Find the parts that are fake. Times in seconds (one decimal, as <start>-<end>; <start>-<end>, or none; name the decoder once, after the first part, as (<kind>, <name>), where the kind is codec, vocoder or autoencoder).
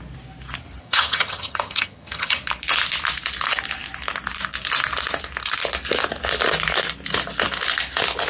0.8-2.4 (vocoder, HiFi-GAN)